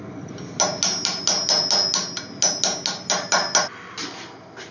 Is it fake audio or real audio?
real